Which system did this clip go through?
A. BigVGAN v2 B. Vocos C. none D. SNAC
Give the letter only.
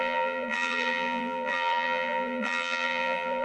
A